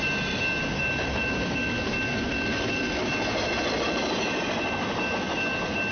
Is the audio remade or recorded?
recorded